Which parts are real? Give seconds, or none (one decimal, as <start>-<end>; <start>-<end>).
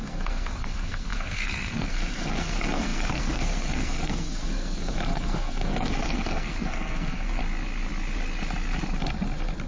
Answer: 7.4-9.7